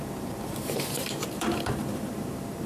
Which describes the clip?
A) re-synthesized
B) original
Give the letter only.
A